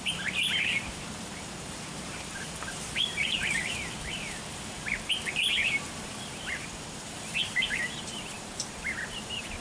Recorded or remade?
remade